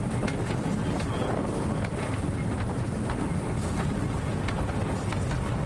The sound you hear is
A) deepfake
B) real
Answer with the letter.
B